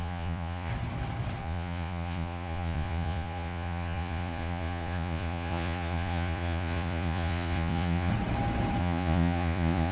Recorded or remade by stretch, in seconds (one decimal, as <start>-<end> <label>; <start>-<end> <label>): 0.0-0.7 remade; 0.7-1.4 recorded; 1.4-8.1 remade; 8.1-8.8 recorded; 8.8-9.9 remade